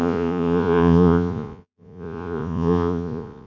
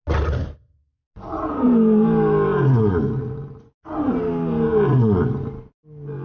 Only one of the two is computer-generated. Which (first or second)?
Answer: first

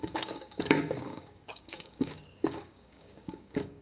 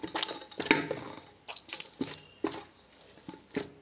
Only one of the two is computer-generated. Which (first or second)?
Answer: first